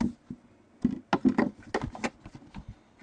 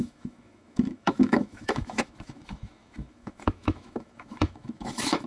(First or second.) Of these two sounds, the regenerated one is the second